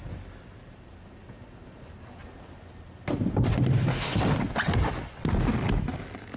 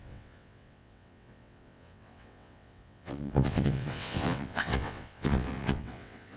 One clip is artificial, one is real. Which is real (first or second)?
first